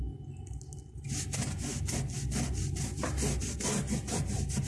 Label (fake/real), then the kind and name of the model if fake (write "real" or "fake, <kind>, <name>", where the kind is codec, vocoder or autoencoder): real